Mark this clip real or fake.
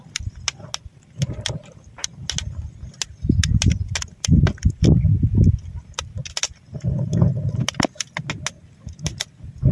real